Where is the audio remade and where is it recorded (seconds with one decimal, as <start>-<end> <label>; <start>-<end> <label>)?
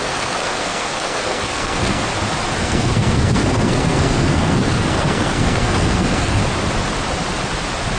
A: 0.0-2.1 remade; 2.1-2.6 recorded; 2.6-6.4 remade; 6.4-8.0 recorded